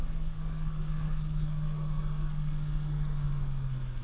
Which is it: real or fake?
fake